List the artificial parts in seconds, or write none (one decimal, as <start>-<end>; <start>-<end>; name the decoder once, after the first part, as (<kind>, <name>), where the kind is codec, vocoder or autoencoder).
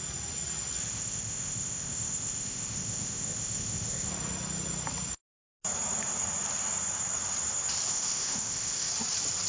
0.8-4.1 (codec, ZipCodec); 7.9-8.9